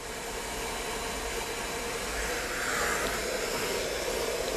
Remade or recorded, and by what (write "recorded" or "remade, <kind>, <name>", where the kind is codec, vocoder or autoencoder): recorded